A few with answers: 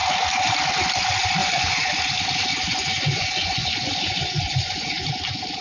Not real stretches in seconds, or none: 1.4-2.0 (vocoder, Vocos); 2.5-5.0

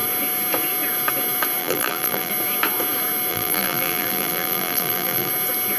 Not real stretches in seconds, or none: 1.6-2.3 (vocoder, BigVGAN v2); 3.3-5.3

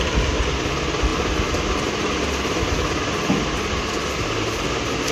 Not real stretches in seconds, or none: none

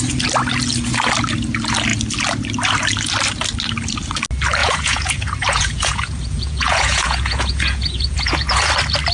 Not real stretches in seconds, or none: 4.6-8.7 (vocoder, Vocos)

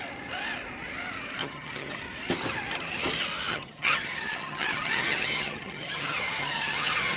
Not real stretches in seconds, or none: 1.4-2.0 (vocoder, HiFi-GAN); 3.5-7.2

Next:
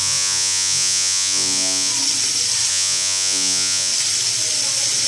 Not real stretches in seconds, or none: 0.0-1.9 (vocoder, Vocos); 2.7-3.9

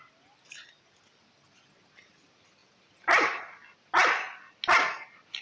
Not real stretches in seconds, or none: none

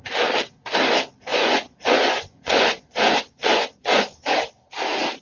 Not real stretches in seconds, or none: 1.3-4.0 (vocoder, Vocos)